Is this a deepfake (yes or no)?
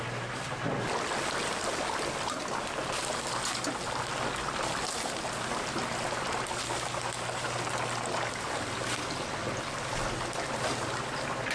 no